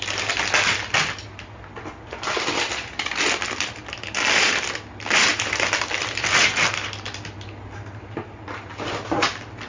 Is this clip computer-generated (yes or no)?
no